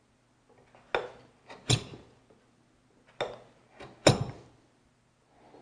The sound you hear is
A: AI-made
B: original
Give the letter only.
B